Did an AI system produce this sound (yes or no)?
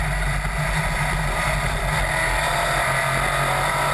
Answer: no